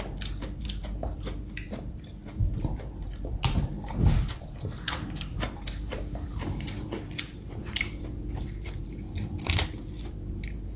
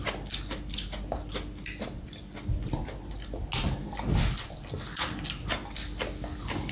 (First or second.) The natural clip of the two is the second